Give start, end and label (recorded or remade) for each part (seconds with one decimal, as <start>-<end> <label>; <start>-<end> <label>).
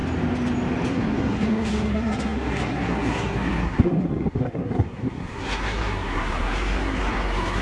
0.0-0.9 recorded; 0.9-7.6 remade